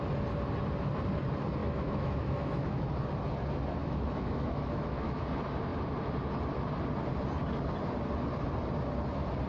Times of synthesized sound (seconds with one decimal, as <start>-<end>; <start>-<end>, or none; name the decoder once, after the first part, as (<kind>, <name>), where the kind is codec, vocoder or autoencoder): 1.6-2.9 (autoencoder, DAC-VAE); 3.8-5.2